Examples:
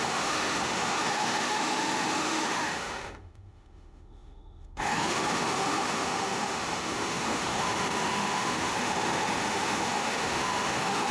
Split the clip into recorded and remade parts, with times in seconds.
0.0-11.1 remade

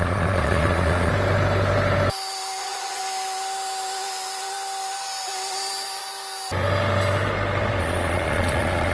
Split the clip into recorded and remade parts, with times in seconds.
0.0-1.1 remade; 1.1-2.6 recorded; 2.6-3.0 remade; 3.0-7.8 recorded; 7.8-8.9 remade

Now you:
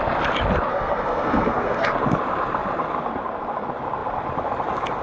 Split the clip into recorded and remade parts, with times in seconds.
0.0-0.7 recorded; 0.7-1.9 remade; 1.9-5.0 recorded

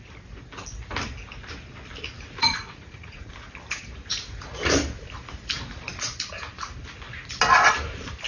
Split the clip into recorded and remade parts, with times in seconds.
0.0-2.4 recorded; 2.4-3.3 remade; 3.3-4.1 recorded; 4.1-4.7 remade; 4.7-8.3 recorded